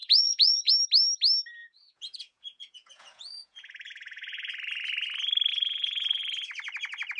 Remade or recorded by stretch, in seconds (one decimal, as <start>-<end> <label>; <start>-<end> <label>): 0.0-0.7 remade; 0.7-1.6 recorded; 1.6-4.5 remade; 4.5-5.5 recorded; 5.5-6.2 remade; 6.2-7.2 recorded